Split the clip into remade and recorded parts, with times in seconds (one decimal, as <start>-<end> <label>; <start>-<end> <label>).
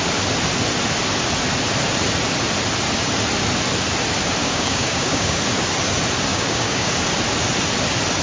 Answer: 0.0-4.4 recorded; 4.4-5.4 remade; 5.4-6.3 recorded; 6.3-6.9 remade; 6.9-8.2 recorded